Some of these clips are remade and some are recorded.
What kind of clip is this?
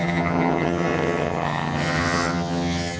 remade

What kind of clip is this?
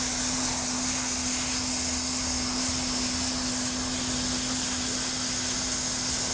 recorded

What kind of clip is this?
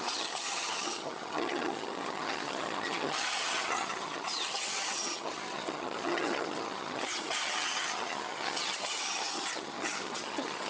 remade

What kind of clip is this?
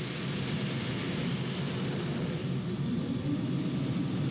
recorded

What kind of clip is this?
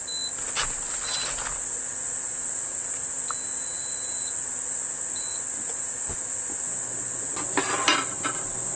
recorded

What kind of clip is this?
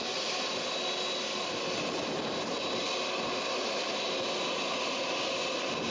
recorded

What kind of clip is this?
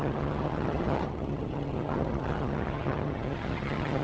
remade